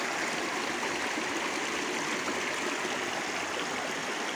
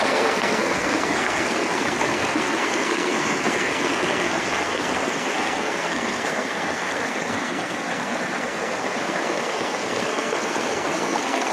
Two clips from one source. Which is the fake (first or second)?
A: second